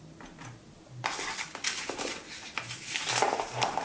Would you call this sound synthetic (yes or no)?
no